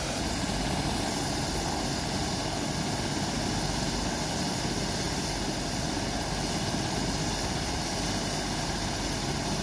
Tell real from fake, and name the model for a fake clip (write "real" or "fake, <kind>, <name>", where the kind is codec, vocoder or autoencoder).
real